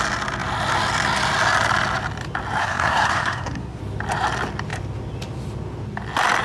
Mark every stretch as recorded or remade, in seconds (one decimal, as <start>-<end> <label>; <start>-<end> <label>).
0.0-2.6 recorded; 2.6-3.8 remade; 3.8-6.4 recorded